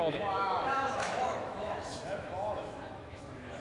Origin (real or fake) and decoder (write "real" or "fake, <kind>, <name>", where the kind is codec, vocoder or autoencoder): fake, autoencoder, DAC-VAE